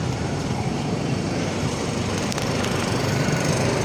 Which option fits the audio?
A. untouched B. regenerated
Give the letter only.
B